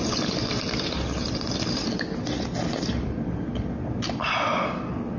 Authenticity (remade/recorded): recorded